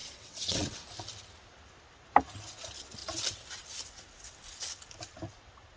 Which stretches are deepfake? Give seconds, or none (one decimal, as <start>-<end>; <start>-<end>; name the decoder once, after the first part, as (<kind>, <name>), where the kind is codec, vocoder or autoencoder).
0.0-0.8 (vocoder, WaveNeXt)